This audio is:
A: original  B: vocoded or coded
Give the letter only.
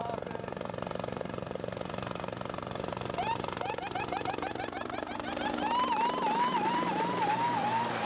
B